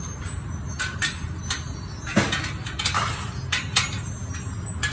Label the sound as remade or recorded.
recorded